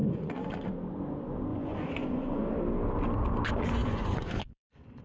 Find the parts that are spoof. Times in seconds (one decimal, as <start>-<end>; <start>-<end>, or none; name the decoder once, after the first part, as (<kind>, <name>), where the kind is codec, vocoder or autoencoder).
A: 0.0-0.7 (vocoder, Vocos); 1.5-2.4; 3.8-5.0